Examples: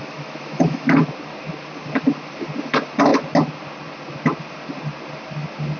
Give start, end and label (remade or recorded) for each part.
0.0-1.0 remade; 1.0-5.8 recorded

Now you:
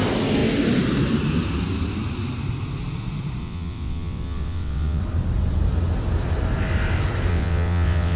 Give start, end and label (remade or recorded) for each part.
0.0-3.4 recorded; 3.4-5.0 remade; 5.0-7.3 recorded; 7.3-8.2 remade

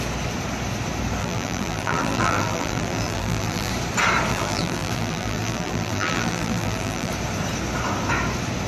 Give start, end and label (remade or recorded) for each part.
0.0-1.2 recorded; 1.2-3.7 remade; 3.7-4.3 recorded; 4.3-7.1 remade; 7.1-8.7 recorded

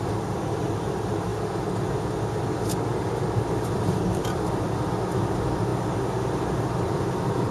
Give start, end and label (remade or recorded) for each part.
0.0-1.3 remade; 1.3-4.5 recorded; 4.5-5.7 remade; 5.7-6.8 recorded; 6.8-7.5 remade

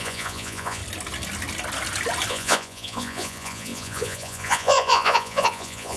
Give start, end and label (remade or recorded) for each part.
0.0-0.8 remade; 0.8-2.3 recorded; 2.3-6.0 remade

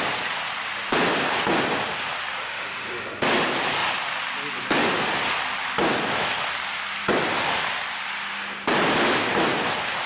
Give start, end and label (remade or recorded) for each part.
0.0-2.4 recorded; 2.4-3.2 remade; 3.2-10.1 recorded